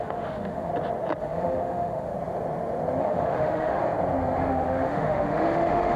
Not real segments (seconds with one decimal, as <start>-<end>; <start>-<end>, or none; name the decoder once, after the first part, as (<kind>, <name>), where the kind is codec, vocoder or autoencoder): 0.0-0.7 (autoencoder, DAC-VAE); 1.2-2.1; 3.0-3.8; 4.5-6.0